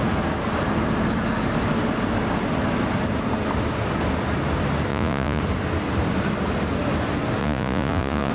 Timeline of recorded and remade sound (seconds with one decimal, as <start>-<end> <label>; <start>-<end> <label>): 0.0-4.9 recorded; 4.9-5.4 remade; 5.4-7.4 recorded; 7.4-8.3 remade